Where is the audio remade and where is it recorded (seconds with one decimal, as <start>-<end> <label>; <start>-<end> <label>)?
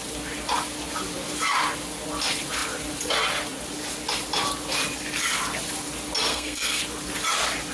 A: 0.0-6.3 recorded; 6.3-6.8 remade; 6.8-7.7 recorded